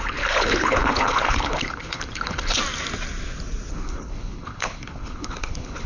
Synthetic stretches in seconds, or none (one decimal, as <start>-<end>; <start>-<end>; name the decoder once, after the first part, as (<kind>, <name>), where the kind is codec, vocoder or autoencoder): 0.0-2.6 (codec, HILCodec); 3.7-5.9